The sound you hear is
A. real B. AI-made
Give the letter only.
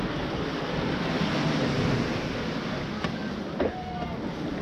A